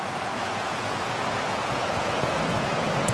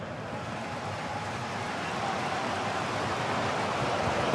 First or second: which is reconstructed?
first